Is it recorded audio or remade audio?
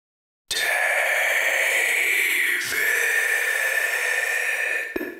recorded